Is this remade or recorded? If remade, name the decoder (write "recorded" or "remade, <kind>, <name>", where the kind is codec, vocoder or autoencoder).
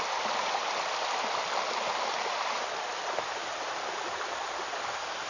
recorded